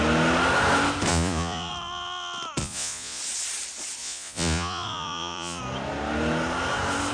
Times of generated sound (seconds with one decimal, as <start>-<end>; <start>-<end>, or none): 1.1-1.7; 2.6-3.2; 4.0-5.6

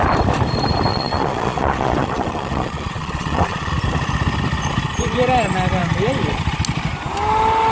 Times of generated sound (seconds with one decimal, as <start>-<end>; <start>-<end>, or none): 0.9-3.7

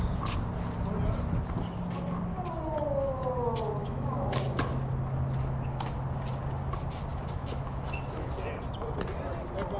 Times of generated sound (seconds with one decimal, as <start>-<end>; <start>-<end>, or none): 3.8-4.7; 7.1-8.3

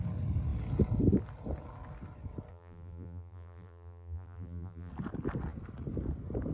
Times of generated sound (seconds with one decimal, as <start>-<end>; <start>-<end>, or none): 2.5-4.9